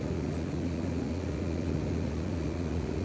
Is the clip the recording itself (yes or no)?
no